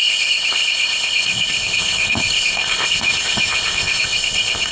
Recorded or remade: remade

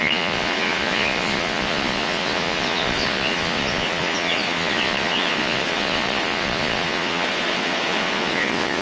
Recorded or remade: remade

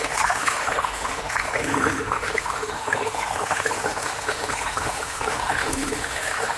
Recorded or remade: remade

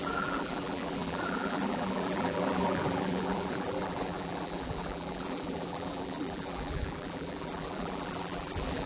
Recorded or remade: remade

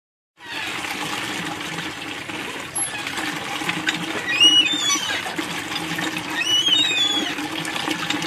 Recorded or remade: recorded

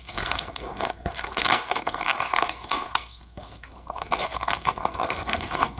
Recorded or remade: remade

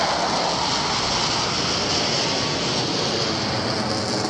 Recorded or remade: recorded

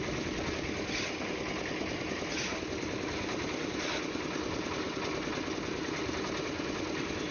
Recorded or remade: recorded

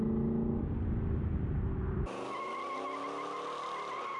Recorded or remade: recorded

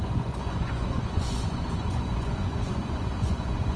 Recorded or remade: remade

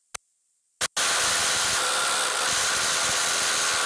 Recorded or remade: recorded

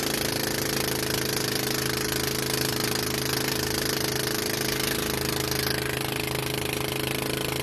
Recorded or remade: recorded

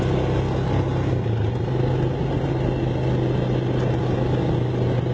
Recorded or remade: recorded